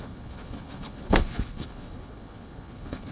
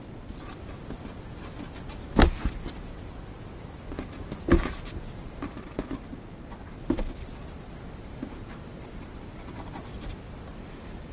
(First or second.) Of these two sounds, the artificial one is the first